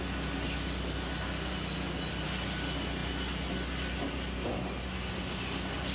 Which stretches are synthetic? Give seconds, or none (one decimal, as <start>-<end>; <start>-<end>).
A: none